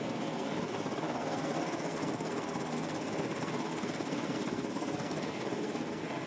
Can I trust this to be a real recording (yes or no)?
no